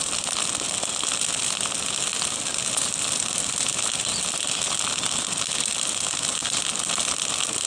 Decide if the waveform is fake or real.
real